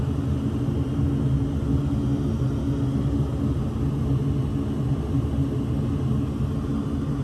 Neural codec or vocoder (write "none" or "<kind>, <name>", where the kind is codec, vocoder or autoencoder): none